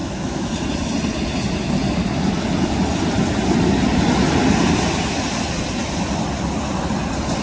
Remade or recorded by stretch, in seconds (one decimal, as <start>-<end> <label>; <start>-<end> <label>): 0.0-0.5 remade; 0.5-7.4 recorded